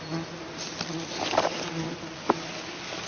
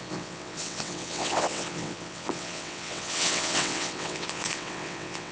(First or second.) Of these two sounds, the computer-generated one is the second